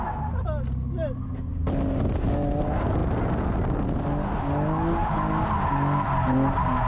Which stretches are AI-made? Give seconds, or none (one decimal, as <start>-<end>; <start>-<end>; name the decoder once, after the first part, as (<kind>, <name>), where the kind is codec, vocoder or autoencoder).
none